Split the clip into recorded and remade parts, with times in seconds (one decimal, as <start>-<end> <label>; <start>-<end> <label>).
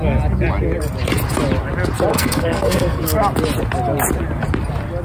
0.0-2.1 recorded; 2.1-3.0 remade; 3.0-5.0 recorded